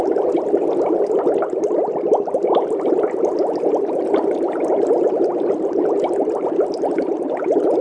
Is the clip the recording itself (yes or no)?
yes